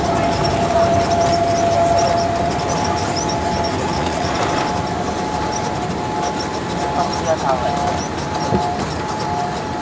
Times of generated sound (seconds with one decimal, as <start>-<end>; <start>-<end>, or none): 3.8-4.4